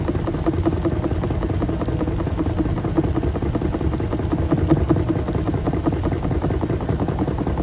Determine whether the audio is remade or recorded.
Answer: recorded